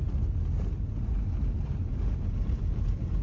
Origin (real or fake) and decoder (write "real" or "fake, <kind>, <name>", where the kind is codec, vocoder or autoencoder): real